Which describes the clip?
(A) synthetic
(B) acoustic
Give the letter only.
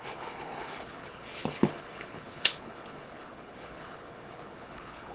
A